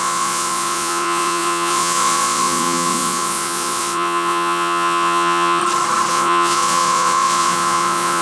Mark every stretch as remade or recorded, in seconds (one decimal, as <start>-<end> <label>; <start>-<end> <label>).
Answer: 0.0-5.6 remade; 5.6-6.1 recorded; 6.1-8.2 remade